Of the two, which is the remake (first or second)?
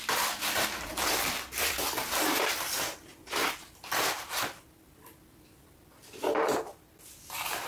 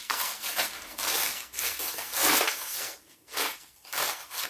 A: second